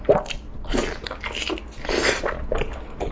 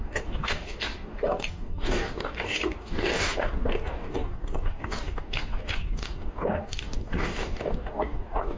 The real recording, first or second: first